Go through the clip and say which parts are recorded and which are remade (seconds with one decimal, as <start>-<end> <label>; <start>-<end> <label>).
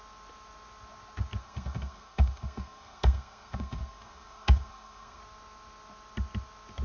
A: 0.0-1.4 recorded; 1.4-5.2 remade; 5.2-6.8 recorded